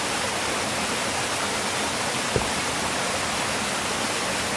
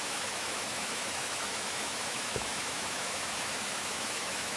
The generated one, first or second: second